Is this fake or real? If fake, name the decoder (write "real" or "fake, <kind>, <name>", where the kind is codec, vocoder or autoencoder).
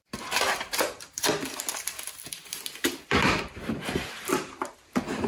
fake, vocoder, BigVGAN v2